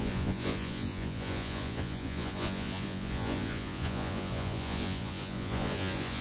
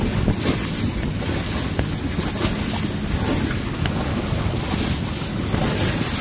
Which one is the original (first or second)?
second